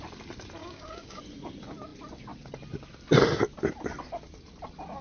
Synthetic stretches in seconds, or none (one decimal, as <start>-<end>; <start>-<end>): 0.6-1.2